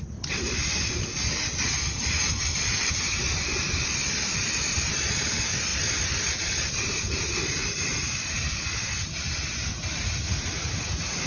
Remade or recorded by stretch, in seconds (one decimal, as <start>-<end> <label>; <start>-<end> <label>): 0.0-9.7 recorded; 9.7-11.3 remade